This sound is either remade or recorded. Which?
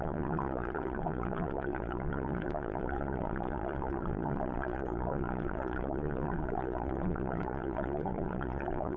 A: remade